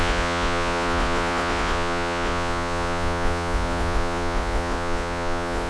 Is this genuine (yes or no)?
no